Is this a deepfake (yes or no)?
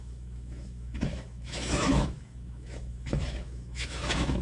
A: yes